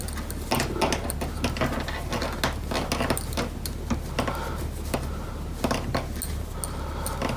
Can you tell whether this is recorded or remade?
recorded